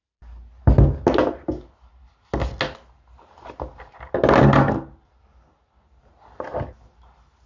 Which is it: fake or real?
real